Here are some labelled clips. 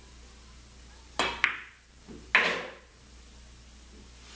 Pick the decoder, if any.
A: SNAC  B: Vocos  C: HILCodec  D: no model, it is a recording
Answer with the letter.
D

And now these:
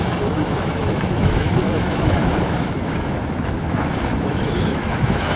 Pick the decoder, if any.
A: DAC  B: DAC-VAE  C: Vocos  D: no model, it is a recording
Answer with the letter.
B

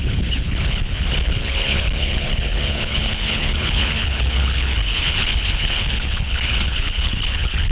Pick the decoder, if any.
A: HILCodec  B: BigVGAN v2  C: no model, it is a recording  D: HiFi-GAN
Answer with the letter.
A